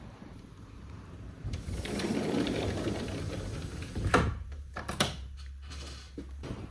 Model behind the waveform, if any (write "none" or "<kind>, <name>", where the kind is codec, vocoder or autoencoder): vocoder, BigVGAN v2